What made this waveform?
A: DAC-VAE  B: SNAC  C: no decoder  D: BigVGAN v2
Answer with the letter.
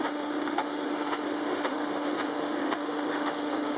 A